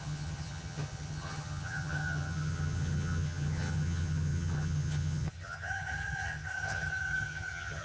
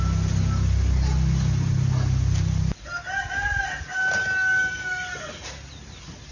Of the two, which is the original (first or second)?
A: second